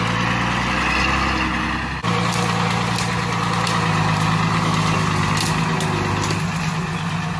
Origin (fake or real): real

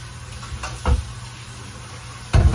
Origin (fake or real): real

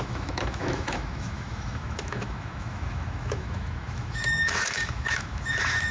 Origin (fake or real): fake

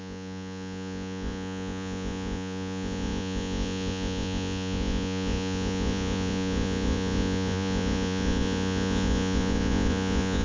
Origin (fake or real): fake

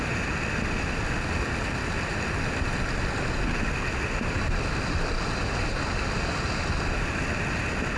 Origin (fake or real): real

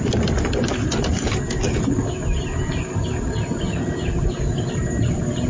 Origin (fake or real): real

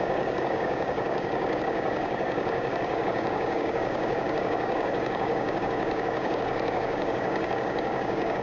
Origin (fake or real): fake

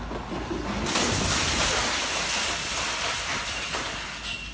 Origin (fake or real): real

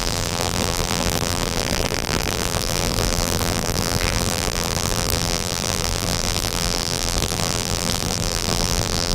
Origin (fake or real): fake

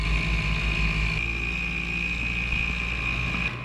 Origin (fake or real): real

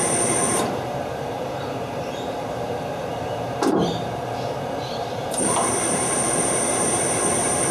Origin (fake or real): fake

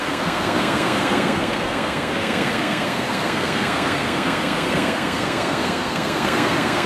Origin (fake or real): fake